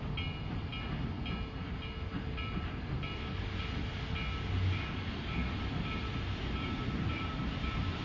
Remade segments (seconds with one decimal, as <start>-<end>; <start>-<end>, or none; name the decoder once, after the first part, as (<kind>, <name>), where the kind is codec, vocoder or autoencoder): 0.0-0.7 (vocoder, BigVGAN v2); 4.9-8.0